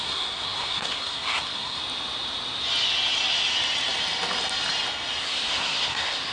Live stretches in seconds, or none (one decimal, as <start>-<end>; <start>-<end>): 1.8-5.2